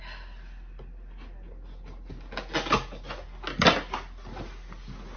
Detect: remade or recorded recorded